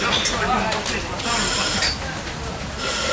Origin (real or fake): real